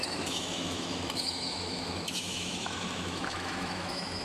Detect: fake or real fake